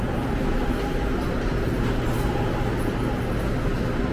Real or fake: real